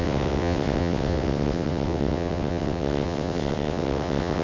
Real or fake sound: fake